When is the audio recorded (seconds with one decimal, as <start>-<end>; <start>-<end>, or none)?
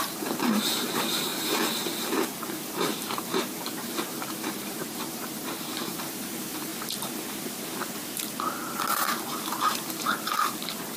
1.3-2.0; 6.7-9.0